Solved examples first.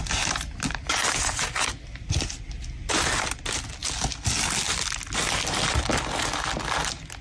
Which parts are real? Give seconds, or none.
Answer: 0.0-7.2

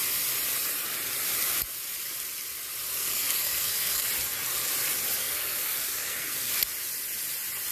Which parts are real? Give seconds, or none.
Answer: 0.0-2.9; 4.1-5.2; 6.5-7.7

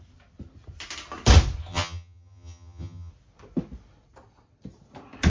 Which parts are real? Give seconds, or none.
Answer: 0.0-1.7; 3.1-5.3

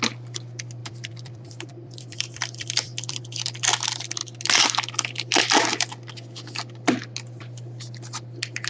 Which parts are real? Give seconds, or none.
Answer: 0.0-0.8; 3.2-8.7

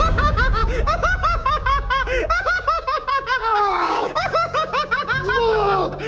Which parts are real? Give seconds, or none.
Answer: none

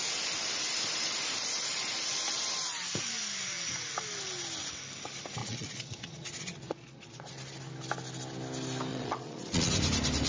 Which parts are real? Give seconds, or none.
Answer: 0.0-5.4; 7.3-8.9; 9.7-10.3

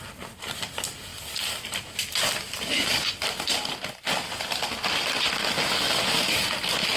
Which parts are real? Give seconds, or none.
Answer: 0.0-1.1; 5.3-7.0

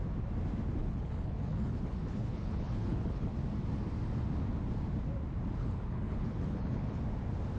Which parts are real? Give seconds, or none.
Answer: 0.0-0.8; 3.3-5.6; 7.0-7.6